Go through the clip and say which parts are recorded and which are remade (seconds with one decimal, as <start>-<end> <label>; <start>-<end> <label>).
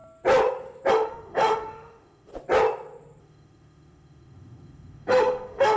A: 0.0-0.9 recorded; 0.9-2.3 remade; 2.3-3.2 recorded; 3.2-5.8 remade